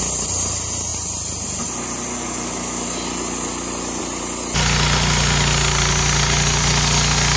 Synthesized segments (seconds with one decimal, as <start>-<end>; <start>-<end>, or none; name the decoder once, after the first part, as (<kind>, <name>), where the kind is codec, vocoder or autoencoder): none